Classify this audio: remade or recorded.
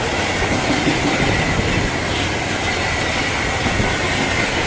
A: recorded